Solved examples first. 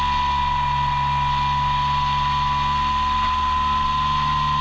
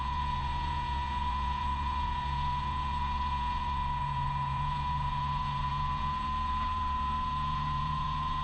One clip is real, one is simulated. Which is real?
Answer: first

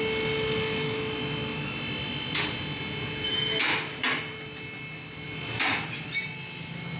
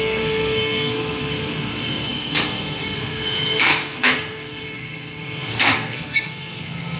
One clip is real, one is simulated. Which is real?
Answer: first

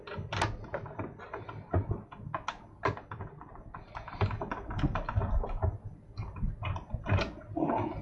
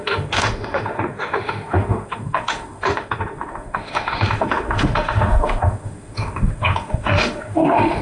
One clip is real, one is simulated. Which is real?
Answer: first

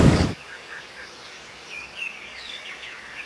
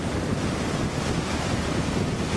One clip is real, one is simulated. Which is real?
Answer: second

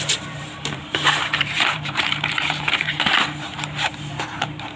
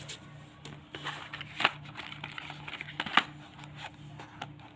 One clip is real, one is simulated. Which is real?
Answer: second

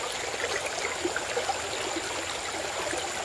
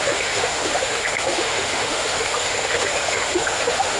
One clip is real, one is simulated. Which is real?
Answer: first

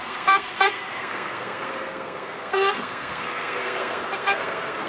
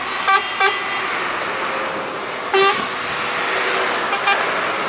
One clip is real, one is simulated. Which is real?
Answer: second